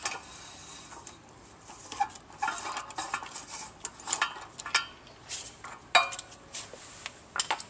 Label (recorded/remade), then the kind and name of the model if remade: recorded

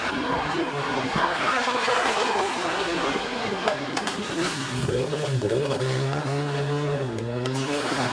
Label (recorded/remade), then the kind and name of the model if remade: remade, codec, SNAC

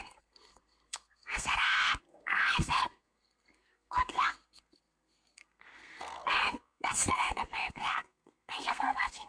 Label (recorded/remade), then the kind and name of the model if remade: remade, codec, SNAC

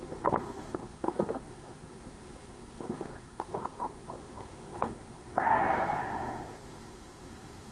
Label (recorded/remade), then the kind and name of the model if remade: remade, codec, SNAC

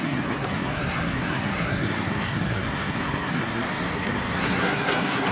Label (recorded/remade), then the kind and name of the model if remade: remade, codec, SNAC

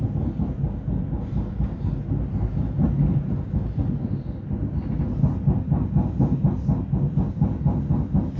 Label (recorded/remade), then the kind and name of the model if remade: recorded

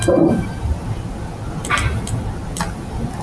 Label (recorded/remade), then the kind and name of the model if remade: recorded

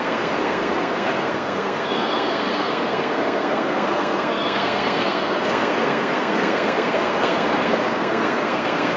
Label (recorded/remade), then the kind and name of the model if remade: remade, codec, SNAC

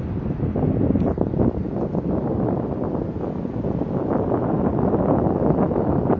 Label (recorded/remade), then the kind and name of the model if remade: recorded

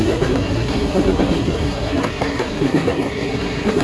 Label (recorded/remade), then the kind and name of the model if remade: remade, codec, SNAC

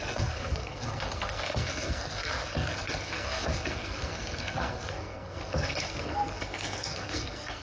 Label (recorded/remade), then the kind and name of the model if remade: remade, codec, SNAC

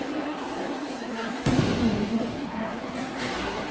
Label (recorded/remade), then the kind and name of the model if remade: remade, codec, SNAC